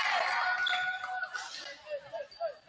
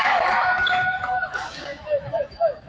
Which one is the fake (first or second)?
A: second